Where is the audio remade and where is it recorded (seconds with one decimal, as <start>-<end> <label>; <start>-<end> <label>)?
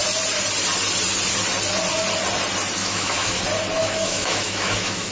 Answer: 0.0-2.8 recorded; 2.8-3.4 remade; 3.4-3.8 recorded; 3.8-5.1 remade